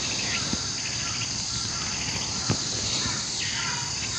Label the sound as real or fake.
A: real